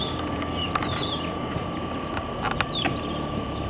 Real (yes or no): yes